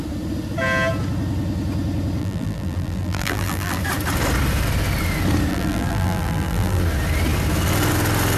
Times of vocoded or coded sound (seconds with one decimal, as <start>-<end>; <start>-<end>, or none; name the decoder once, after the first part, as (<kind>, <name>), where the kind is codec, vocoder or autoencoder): 2.2-3.8 (vocoder, BigVGAN v2); 5.5-6.8